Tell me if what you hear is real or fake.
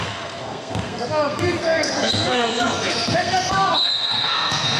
fake